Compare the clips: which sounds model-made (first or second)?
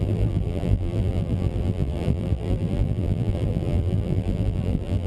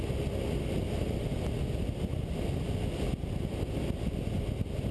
first